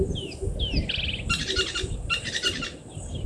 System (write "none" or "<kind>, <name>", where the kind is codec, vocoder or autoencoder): none